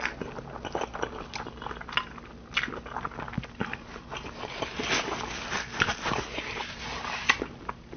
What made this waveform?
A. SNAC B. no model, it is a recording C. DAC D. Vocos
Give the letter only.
B